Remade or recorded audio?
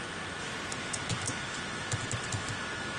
recorded